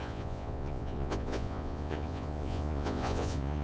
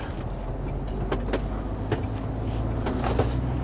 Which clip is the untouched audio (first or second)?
second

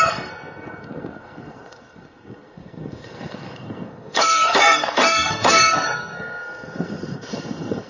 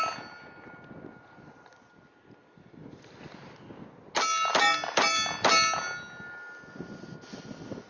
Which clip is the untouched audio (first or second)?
second